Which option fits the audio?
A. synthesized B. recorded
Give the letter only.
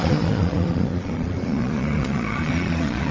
A